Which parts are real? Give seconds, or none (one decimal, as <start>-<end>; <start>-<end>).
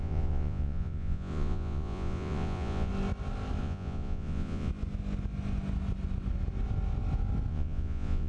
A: 2.9-3.6; 4.7-7.5